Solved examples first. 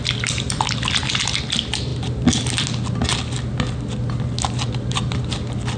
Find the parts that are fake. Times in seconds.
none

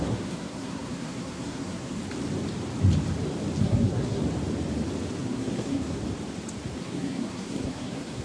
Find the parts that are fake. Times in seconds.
0.0-2.0 (codec, SNAC); 3.6-4.2; 5.2-6.0; 6.8-8.2

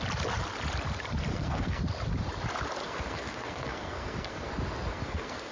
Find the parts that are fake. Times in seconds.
1.3-1.8 (codec, SNAC); 2.8-4.5; 4.9-5.5

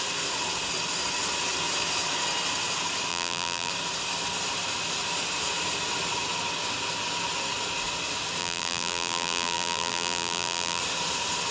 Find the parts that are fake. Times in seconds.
3.1-3.7 (vocoder, BigVGAN v2); 8.4-10.8

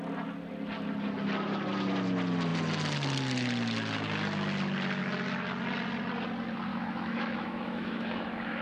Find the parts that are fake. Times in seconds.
6.7-8.6 (autoencoder, DAC-VAE)